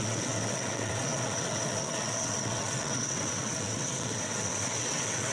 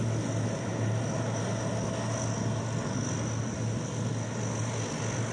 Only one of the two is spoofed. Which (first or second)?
first